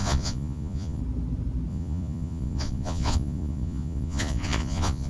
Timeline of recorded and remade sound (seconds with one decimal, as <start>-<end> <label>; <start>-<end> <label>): 0.0-1.0 remade; 1.0-1.7 recorded; 1.7-5.1 remade